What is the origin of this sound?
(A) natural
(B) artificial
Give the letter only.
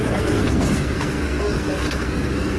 B